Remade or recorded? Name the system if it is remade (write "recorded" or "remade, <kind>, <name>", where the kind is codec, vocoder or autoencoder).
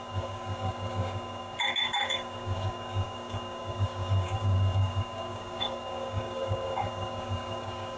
remade, codec, DAC